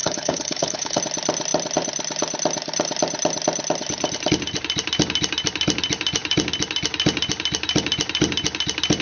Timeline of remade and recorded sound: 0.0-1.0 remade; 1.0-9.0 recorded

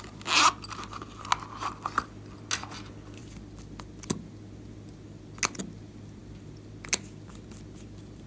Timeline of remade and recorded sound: 0.0-8.3 recorded

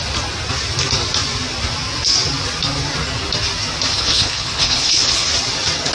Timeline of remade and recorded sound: 0.0-3.9 recorded; 3.9-5.3 remade; 5.3-5.9 recorded